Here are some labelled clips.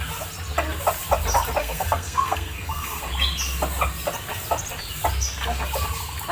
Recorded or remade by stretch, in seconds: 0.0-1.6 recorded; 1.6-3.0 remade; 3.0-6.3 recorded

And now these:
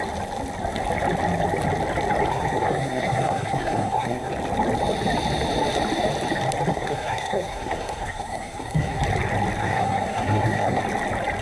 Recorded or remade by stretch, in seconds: 0.0-2.3 recorded; 2.3-4.3 remade; 4.3-6.7 recorded; 6.7-9.0 remade; 9.0-9.6 recorded; 9.6-10.8 remade; 10.8-11.4 recorded